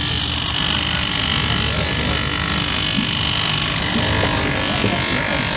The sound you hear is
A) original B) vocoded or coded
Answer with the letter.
A